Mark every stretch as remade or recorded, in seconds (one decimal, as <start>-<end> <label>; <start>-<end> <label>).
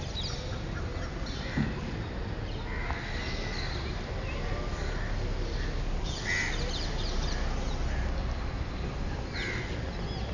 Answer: 0.0-10.3 recorded